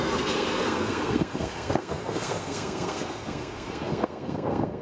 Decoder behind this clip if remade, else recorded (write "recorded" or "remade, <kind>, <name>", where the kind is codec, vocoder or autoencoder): remade, codec, SNAC